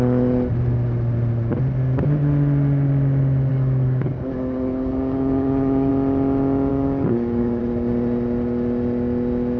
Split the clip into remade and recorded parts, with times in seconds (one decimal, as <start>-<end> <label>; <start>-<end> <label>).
0.0-3.5 recorded; 3.5-5.9 remade; 5.9-6.7 recorded; 6.7-7.6 remade; 7.6-9.6 recorded